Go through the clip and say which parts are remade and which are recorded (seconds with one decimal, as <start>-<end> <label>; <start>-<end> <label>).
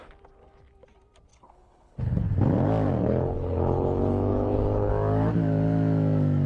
0.0-1.3 recorded; 1.3-2.3 remade; 2.3-3.0 recorded; 3.0-4.9 remade; 4.9-6.5 recorded